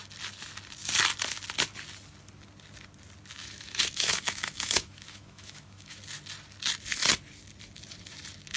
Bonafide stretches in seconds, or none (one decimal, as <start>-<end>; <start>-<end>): 0.0-3.4; 6.0-8.6